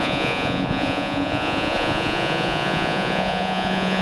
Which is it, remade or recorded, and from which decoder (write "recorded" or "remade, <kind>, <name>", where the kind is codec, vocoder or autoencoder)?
remade, vocoder, Vocos